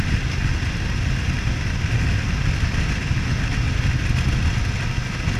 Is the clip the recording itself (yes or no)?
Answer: yes